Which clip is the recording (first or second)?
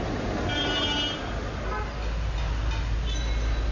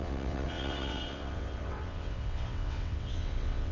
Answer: first